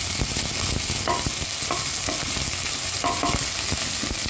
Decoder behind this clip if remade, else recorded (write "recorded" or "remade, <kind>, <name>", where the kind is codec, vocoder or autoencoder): recorded